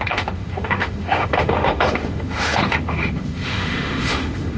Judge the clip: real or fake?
fake